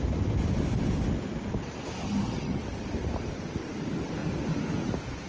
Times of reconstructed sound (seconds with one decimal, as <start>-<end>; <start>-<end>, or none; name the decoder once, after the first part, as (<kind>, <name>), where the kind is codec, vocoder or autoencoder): 2.0-2.6 (vocoder, HiFi-GAN)